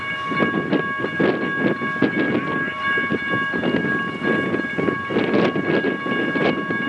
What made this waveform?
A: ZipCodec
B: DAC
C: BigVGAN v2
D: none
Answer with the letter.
D